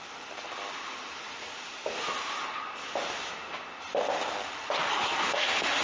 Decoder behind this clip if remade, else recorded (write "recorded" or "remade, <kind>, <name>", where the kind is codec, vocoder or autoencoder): recorded